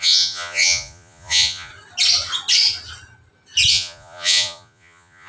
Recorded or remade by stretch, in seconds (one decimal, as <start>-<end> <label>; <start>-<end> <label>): 0.0-1.7 remade; 1.7-3.7 recorded; 3.7-5.3 remade